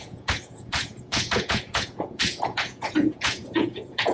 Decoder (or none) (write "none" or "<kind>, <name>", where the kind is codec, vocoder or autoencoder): vocoder, Vocos